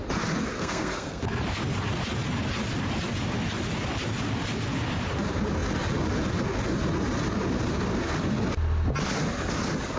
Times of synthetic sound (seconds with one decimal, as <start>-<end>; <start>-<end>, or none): 0.5-1.2